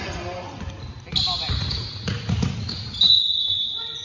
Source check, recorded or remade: recorded